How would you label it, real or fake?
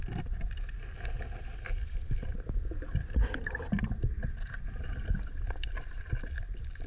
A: real